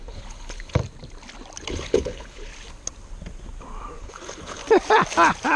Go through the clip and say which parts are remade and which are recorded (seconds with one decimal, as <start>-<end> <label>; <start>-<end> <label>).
0.0-0.8 remade; 0.8-1.7 recorded; 1.7-2.5 remade; 2.5-4.0 recorded; 4.0-4.6 remade; 4.6-5.6 recorded